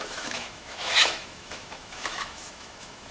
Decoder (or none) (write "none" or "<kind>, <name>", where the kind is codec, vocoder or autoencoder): autoencoder, DAC-VAE